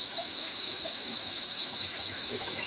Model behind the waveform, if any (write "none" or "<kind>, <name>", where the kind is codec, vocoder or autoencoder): autoencoder, DAC-VAE